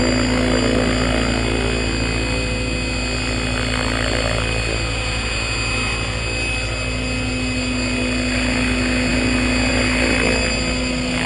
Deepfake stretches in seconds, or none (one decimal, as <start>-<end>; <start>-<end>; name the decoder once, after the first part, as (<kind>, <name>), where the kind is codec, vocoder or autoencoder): none